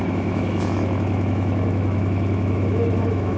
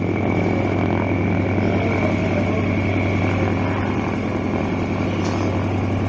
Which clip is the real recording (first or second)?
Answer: second